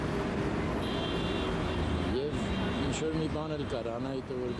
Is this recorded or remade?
recorded